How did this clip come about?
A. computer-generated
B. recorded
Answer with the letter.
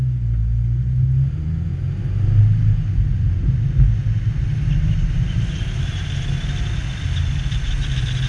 B